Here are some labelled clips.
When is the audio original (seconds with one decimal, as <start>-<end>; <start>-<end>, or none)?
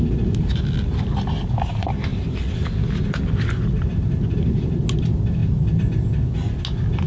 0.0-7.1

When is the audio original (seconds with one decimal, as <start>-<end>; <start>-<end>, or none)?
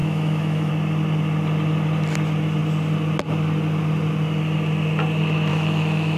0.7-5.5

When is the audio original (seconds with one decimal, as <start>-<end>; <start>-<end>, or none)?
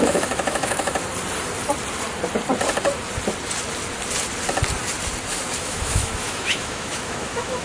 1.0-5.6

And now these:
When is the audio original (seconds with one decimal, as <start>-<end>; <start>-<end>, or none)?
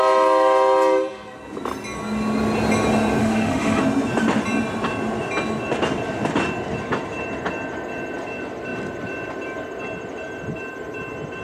0.0-3.2; 3.8-11.4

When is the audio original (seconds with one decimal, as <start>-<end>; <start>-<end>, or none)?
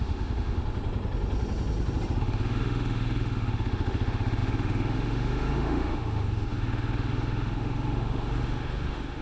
0.6-2.2